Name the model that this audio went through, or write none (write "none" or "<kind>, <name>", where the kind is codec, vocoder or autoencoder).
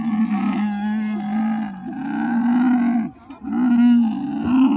none